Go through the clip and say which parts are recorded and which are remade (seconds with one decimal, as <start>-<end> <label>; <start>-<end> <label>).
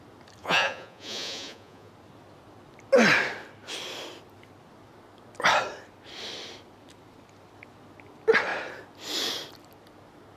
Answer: 0.0-0.4 recorded; 0.4-1.9 remade; 1.9-10.4 recorded